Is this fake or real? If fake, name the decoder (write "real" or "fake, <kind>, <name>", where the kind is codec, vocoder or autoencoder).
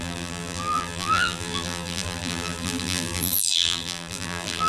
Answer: fake, vocoder, BigVGAN v2